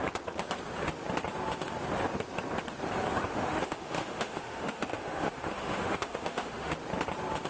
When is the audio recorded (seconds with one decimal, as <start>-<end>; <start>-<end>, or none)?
0.0-3.3; 6.7-7.5